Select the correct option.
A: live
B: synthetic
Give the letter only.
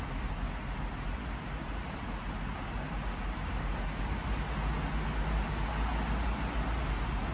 A